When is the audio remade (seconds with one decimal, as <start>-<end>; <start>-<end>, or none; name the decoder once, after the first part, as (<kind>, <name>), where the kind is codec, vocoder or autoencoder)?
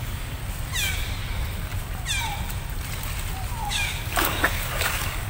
0.0-0.4 (codec, DAC); 3.6-5.3